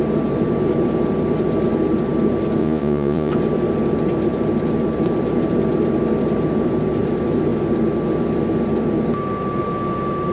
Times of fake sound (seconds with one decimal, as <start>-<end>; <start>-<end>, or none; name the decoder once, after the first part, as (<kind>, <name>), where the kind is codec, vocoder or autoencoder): 2.6-3.3 (vocoder, Vocos)